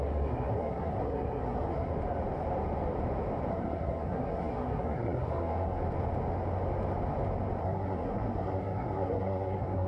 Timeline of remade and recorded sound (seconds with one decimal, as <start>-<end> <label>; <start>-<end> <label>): 0.0-1.9 remade; 1.9-3.5 recorded; 3.5-5.8 remade; 5.8-7.6 recorded; 7.6-9.9 remade